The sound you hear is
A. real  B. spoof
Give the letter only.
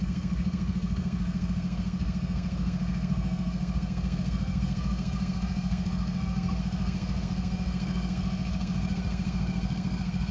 B